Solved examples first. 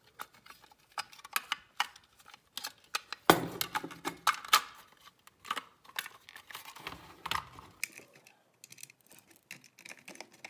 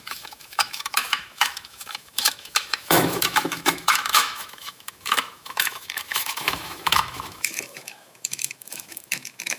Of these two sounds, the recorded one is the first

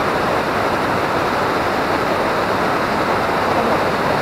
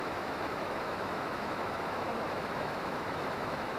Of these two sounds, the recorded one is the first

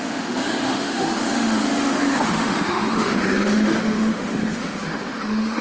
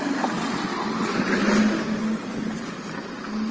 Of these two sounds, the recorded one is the second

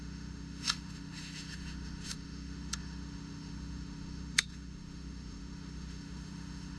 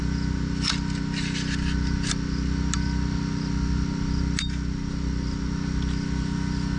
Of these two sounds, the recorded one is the second